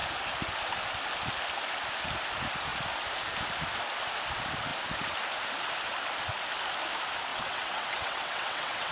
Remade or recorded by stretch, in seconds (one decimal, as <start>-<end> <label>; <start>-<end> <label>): 0.0-7.3 recorded; 7.3-8.9 remade